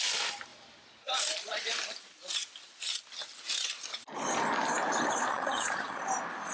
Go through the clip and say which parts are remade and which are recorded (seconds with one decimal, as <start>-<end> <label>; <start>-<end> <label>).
0.0-5.3 recorded; 5.3-6.0 remade; 6.0-6.5 recorded